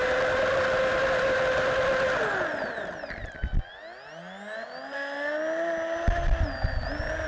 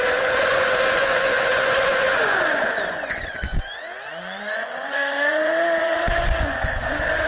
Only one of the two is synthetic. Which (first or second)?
second